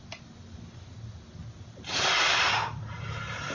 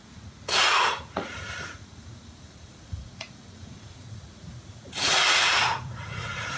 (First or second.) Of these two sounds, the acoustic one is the first